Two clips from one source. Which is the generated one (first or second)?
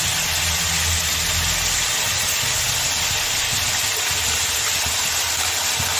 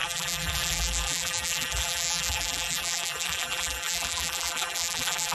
second